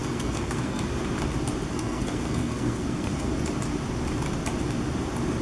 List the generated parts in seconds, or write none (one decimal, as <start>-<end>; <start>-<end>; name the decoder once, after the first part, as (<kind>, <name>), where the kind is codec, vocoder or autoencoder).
0.0-0.8 (codec, SNAC); 1.7-3.3